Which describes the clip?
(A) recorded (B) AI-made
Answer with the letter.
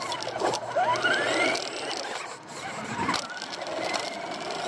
A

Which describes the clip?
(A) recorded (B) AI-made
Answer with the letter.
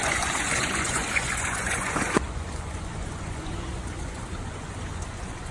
B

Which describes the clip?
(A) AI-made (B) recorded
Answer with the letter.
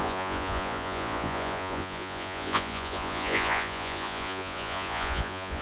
A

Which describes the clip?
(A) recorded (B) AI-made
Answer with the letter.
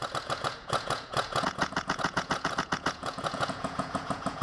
B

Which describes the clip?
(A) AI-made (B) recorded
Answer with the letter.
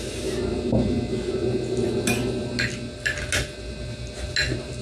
B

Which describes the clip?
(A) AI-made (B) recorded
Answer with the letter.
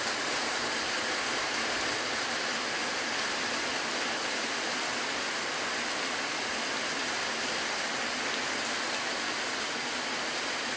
B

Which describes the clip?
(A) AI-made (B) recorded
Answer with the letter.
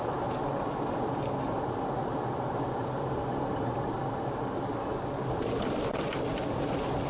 B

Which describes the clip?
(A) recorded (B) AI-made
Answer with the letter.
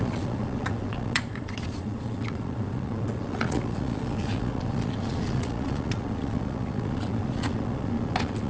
B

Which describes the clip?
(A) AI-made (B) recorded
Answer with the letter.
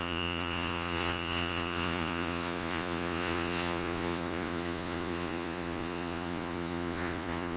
A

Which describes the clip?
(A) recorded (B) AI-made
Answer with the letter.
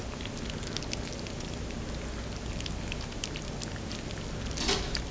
A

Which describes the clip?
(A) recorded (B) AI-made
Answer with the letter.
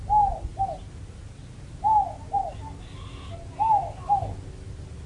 A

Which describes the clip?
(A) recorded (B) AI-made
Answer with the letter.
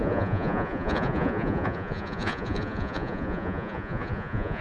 B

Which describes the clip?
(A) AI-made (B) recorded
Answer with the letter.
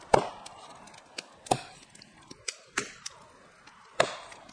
B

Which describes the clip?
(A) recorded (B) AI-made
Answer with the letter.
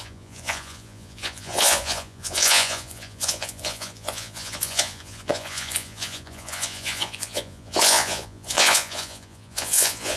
B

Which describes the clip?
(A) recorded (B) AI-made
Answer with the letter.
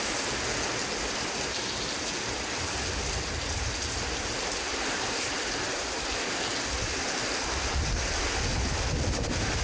A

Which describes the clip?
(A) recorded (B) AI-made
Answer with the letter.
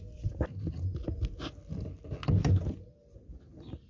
A